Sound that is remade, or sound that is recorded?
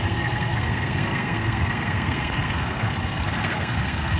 remade